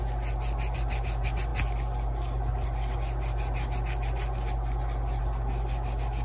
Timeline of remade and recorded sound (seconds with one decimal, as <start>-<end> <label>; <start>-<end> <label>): 0.0-6.2 recorded